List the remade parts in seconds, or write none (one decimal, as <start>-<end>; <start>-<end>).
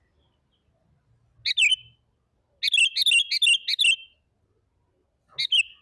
none